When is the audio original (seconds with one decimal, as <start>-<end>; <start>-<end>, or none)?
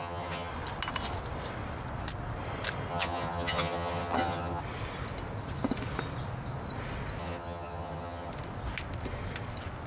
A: 0.5-2.9; 4.6-7.2; 8.3-9.9